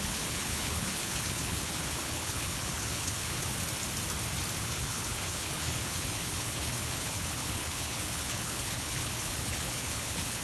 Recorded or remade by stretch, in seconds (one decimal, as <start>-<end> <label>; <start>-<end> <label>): 0.0-3.5 remade; 3.5-4.6 recorded; 4.6-10.4 remade